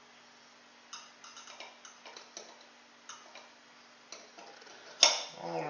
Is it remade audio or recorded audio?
recorded